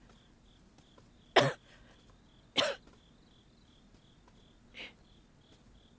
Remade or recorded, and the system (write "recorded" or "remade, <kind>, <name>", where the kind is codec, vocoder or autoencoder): recorded